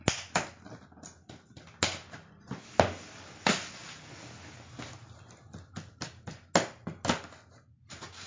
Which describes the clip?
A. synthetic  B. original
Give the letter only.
B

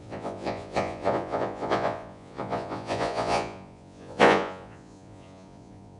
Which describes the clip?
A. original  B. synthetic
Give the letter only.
B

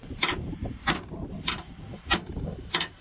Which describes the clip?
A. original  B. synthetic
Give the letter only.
A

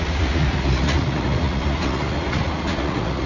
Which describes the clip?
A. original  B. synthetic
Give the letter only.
B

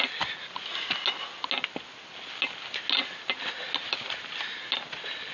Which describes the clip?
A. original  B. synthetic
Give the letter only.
A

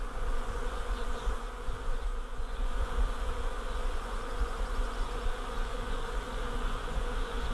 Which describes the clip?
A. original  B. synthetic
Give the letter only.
B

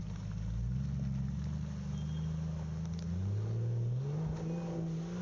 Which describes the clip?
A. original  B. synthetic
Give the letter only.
A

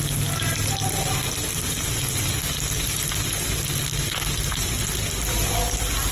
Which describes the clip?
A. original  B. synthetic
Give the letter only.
A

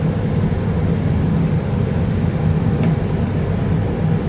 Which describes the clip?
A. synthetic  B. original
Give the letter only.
B